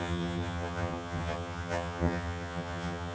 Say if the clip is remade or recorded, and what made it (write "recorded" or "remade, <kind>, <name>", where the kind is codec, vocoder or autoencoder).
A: remade, vocoder, HiFi-GAN